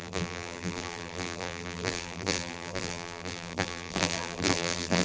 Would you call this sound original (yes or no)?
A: no